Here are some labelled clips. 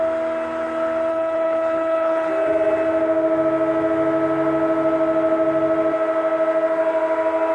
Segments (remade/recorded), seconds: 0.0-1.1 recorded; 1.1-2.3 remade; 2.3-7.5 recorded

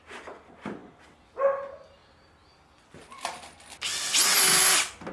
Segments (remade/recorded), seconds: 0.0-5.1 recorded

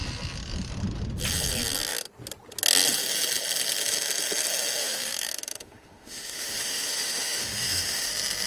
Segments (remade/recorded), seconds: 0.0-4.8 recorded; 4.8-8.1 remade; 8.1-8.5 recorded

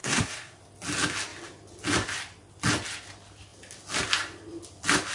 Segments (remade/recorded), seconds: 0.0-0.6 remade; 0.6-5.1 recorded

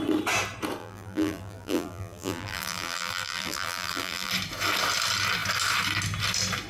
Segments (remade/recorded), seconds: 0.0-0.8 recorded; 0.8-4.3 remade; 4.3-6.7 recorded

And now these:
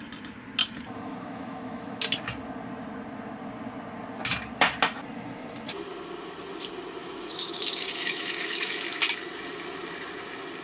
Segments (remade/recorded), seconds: 0.0-0.6 recorded; 0.6-2.0 remade; 2.0-7.0 recorded; 7.0-9.0 remade; 9.0-10.6 recorded

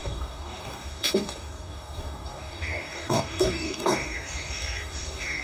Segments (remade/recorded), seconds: 0.0-5.4 remade

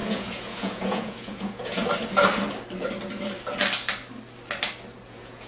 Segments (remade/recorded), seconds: 0.0-1.8 remade; 1.8-5.1 recorded; 5.1-5.5 remade